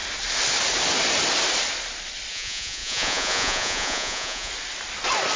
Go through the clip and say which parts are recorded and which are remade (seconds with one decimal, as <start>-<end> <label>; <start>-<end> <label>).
0.0-2.3 recorded; 2.3-4.5 remade; 4.5-5.4 recorded